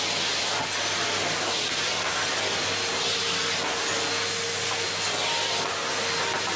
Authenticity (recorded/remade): recorded